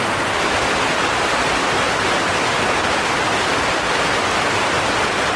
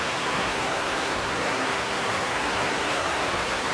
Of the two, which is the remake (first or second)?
second